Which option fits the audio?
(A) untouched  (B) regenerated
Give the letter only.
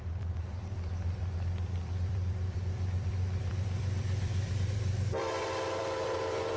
B